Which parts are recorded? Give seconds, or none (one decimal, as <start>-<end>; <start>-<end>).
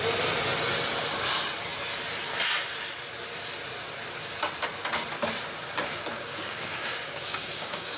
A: 0.0-6.1